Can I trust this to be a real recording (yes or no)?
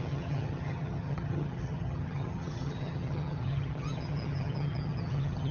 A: no